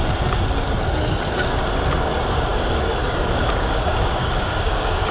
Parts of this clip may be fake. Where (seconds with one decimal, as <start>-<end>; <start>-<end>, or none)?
2.5-5.1